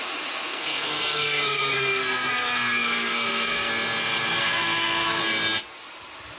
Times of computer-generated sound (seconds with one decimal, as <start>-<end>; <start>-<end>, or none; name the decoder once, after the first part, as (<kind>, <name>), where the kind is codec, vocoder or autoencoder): 0.5-3.7 (codec, SNAC); 4.3-5.2